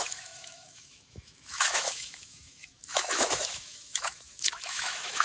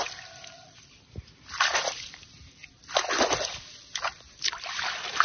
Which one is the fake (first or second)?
first